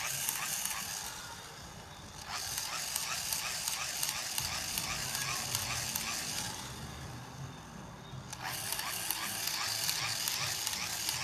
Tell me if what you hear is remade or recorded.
recorded